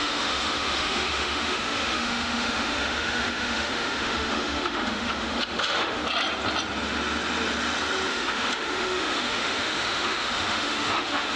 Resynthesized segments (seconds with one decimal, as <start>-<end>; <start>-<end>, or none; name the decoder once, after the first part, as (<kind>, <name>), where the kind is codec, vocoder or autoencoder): 0.0-6.0 (autoencoder, DAC-VAE); 8.1-11.4